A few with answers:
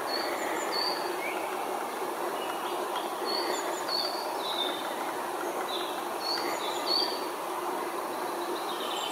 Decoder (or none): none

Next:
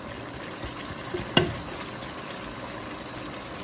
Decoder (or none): none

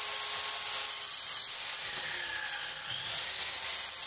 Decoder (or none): none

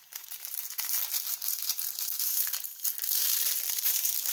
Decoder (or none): vocoder, BigVGAN v2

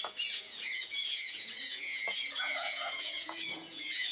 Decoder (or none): vocoder, Vocos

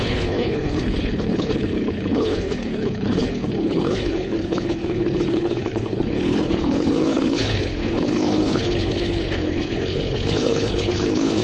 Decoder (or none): codec, HILCodec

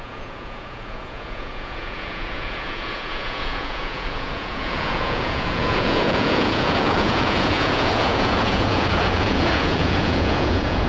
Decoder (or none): vocoder, Vocos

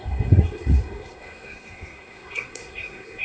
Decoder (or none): codec, SNAC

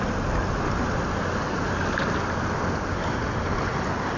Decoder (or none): none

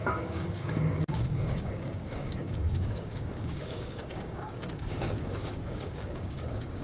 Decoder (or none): codec, DAC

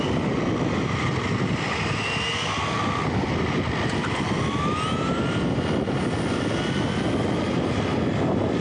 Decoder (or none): none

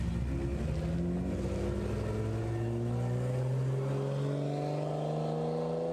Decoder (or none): none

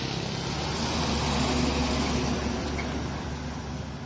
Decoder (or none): none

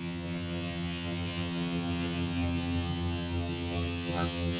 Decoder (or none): vocoder, HiFi-GAN